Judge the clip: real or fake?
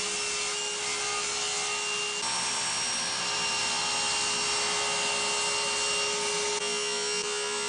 real